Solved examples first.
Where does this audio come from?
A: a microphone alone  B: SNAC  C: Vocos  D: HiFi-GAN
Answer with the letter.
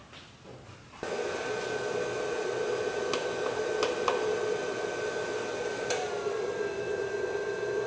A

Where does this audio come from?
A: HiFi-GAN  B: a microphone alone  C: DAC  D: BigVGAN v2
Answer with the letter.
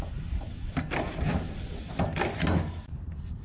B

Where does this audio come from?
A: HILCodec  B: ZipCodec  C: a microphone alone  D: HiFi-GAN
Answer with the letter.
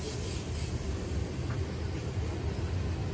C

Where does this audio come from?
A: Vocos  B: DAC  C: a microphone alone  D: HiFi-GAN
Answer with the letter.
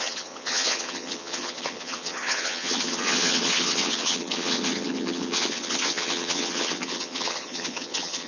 D